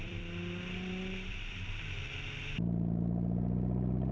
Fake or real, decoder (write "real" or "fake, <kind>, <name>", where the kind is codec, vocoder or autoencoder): fake, vocoder, BigVGAN v2